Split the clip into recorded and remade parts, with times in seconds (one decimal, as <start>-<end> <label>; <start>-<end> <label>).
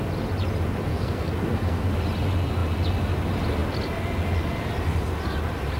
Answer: 0.0-0.9 recorded; 0.9-1.8 remade; 1.8-5.8 recorded